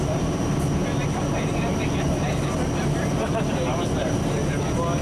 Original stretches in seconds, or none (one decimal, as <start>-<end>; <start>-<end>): 0.0-5.0